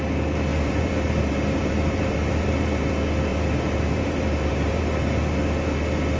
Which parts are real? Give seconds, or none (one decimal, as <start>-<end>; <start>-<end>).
0.0-0.5; 2.9-3.3; 5.2-6.2